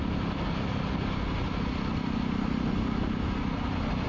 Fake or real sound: real